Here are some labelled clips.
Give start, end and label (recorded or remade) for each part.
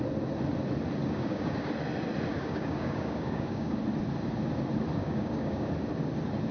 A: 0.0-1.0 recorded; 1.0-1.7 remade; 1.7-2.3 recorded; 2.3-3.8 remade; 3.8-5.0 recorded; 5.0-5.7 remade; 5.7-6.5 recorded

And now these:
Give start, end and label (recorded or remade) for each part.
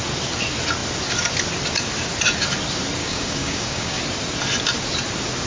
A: 0.0-3.0 recorded; 3.0-4.0 remade; 4.0-5.5 recorded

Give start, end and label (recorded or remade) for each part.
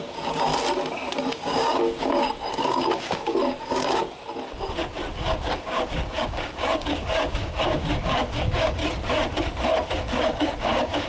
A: 0.0-0.5 remade; 0.5-1.3 recorded; 1.3-4.0 remade; 4.0-5.1 recorded; 5.1-8.8 remade; 8.8-10.0 recorded; 10.0-11.1 remade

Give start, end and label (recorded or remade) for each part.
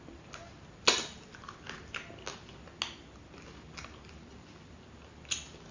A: 0.0-5.7 recorded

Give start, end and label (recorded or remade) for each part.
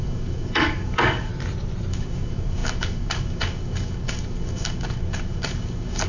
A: 0.0-1.3 remade; 1.3-1.9 recorded; 1.9-6.1 remade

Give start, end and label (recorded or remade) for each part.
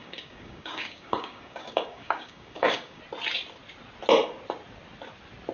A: 0.0-3.0 remade; 3.0-5.5 recorded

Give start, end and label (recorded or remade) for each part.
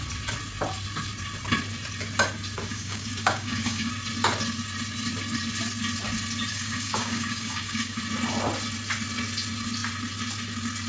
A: 0.0-2.7 recorded; 2.7-3.9 remade; 3.9-6.5 recorded; 6.5-8.0 remade; 8.0-10.9 recorded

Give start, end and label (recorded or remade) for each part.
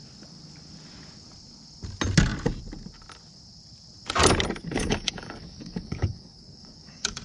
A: 0.0-4.8 recorded; 4.8-7.2 remade